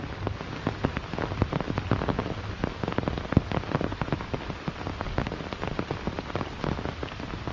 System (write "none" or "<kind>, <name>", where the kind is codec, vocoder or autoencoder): none